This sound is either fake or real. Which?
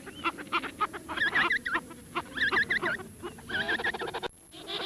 real